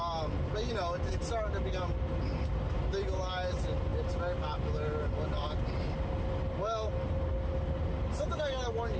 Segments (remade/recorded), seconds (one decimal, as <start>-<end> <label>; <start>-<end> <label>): 0.0-9.0 recorded